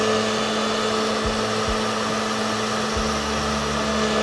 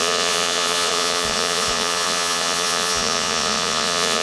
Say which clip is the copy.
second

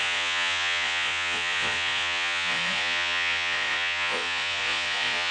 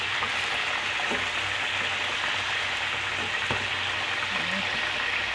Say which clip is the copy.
first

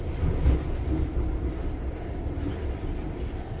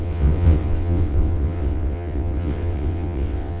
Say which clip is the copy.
second